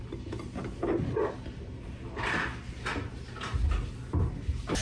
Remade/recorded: recorded